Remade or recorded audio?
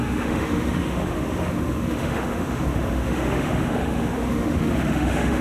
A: remade